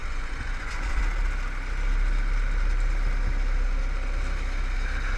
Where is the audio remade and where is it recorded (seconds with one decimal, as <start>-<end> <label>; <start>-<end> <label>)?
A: 0.0-1.0 remade; 1.0-5.2 recorded